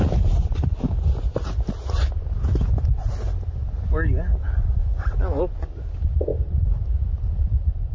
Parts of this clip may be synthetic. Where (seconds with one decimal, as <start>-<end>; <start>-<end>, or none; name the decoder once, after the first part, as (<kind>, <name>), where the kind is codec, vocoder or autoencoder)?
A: 0.5-1.7 (vocoder, BigVGAN v2); 6.3-7.9